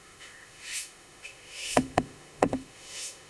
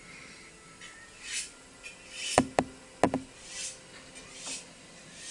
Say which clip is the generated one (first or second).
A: first